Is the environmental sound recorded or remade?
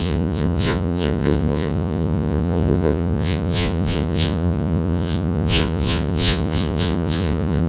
remade